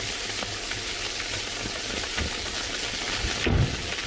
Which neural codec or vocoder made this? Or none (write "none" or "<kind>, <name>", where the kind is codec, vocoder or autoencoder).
none